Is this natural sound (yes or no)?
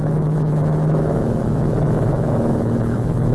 no